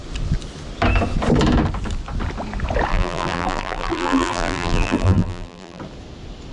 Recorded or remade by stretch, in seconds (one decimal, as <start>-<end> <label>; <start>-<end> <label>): 0.0-2.9 recorded; 2.9-5.8 remade; 5.8-6.5 recorded